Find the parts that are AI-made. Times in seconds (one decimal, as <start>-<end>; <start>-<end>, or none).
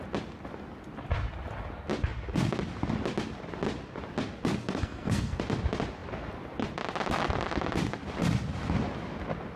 4.6-5.4